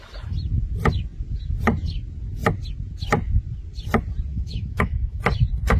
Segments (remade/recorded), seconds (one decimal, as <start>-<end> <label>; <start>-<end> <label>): 0.0-4.3 recorded; 4.3-5.2 remade; 5.2-5.8 recorded